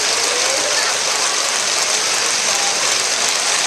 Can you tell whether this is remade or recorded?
recorded